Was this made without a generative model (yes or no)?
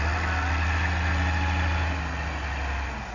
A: yes